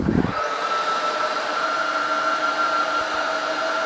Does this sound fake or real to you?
fake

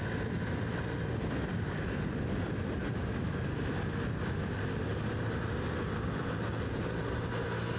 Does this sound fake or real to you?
real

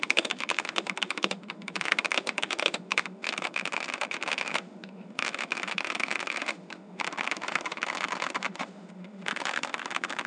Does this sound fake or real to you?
fake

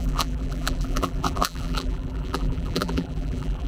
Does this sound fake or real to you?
fake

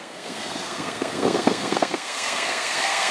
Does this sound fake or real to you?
fake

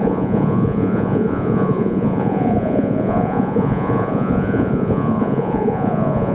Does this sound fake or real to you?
fake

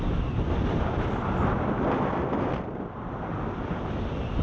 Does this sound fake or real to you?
real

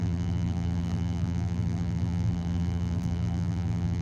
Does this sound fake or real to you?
fake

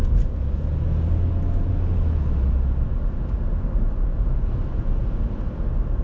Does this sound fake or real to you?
real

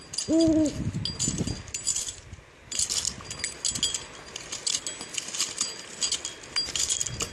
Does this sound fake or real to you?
real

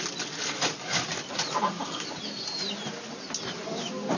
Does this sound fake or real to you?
real